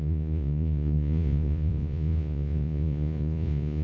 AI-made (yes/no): yes